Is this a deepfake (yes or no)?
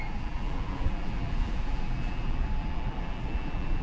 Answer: yes